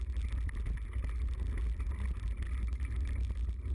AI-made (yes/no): no